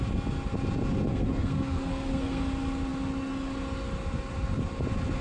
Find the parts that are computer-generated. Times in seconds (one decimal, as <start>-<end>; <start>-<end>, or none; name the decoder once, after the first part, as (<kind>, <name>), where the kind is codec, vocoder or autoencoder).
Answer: 1.1-2.4 (codec, SNAC)

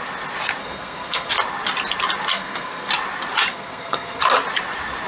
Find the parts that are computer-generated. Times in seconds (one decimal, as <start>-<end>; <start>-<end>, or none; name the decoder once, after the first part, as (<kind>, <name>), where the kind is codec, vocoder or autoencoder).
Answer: 0.6-1.3 (codec, SNAC); 2.3-2.9; 3.5-4.2